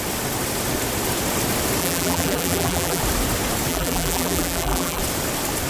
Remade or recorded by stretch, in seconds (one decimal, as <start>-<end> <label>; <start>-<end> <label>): 0.0-1.8 recorded; 1.8-3.0 remade; 3.0-3.7 recorded; 3.7-5.0 remade; 5.0-5.7 recorded